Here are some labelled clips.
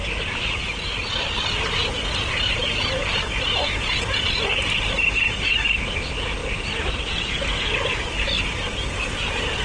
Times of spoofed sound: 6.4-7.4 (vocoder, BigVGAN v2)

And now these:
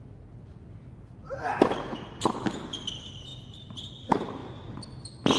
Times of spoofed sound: none

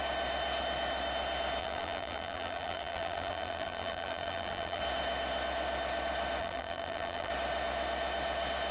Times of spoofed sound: 1.6-4.8 (vocoder, BigVGAN v2); 6.4-7.3

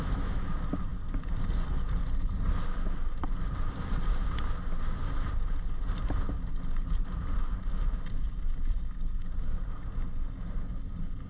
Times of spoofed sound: none

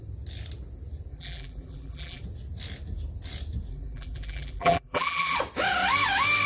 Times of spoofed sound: 1.1-2.2 (vocoder, BigVGAN v2); 3.7-5.4

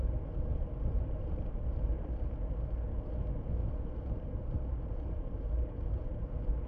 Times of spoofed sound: 0.5-1.9 (vocoder, BigVGAN v2); 3.6-6.7